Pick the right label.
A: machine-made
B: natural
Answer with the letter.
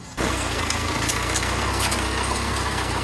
A